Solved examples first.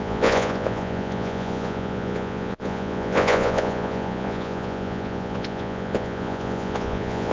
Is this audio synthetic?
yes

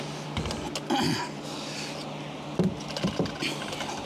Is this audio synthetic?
no